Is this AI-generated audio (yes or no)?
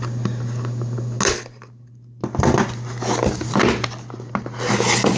no